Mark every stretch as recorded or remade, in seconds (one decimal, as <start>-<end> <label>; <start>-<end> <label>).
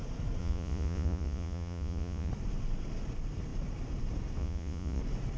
0.0-0.4 recorded; 0.4-2.3 remade; 2.3-4.4 recorded; 4.4-5.0 remade; 5.0-5.4 recorded